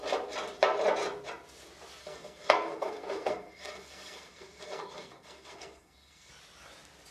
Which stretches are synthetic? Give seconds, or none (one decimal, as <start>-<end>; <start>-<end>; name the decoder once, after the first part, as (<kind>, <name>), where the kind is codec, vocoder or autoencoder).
2.0-6.3 (codec, SNAC)